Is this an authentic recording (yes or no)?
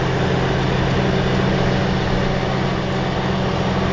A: yes